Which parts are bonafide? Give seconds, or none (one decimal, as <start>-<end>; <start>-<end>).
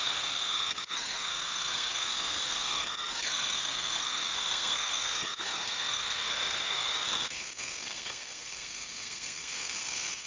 none